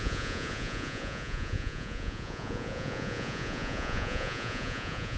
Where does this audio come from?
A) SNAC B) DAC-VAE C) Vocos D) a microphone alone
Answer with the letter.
C